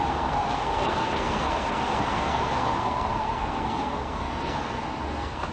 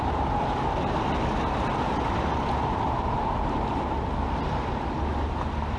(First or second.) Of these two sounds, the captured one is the second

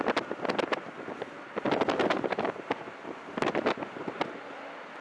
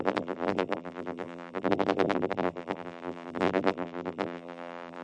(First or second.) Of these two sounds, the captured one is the first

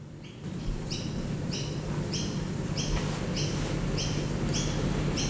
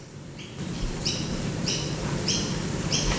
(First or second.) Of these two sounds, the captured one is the first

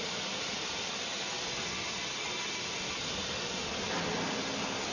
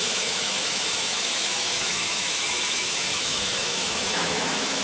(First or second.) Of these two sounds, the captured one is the first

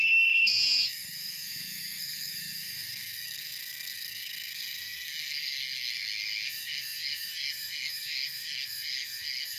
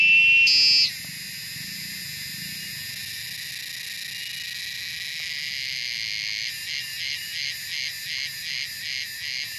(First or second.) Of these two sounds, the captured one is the second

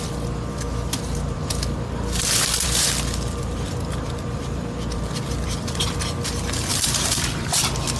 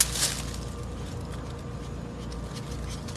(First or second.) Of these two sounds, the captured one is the second